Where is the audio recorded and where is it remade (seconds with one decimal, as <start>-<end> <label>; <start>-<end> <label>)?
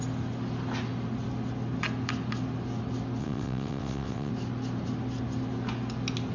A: 0.0-3.2 recorded; 3.2-4.3 remade; 4.3-6.3 recorded